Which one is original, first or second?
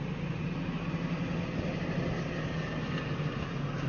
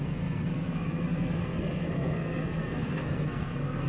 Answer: first